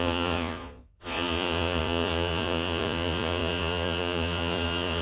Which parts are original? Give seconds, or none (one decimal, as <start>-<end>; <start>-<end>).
none